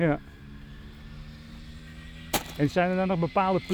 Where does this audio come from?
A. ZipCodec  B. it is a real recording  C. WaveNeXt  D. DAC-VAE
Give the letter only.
B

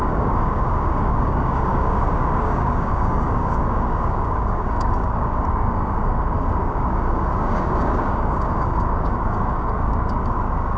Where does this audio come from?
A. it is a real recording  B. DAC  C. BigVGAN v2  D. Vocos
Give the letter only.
B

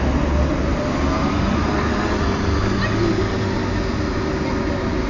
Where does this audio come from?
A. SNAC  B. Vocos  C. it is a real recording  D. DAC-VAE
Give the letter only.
C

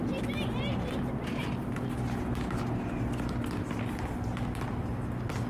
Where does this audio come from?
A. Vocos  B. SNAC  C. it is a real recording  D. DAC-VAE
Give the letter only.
C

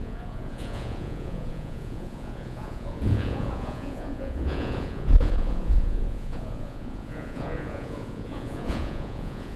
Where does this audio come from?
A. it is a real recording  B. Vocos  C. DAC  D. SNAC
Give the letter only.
B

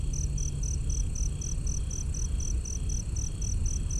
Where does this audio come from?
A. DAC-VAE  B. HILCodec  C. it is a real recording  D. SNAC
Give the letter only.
C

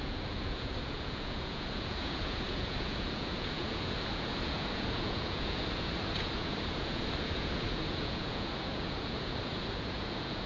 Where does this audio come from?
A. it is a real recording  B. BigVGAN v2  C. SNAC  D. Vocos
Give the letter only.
D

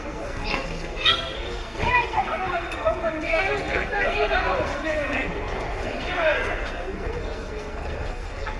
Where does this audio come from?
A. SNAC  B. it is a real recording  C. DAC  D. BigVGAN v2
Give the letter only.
A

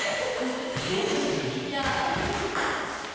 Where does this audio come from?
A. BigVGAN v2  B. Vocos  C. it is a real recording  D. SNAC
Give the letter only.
C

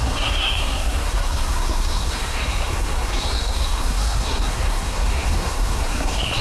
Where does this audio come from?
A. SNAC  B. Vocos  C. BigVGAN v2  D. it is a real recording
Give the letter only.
A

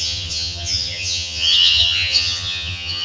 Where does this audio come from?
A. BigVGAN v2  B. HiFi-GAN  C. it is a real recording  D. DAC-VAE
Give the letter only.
B